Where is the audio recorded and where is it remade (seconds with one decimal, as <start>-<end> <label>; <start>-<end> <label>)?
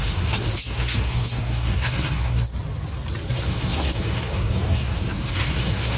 0.0-2.5 remade; 2.5-3.3 recorded; 3.3-6.0 remade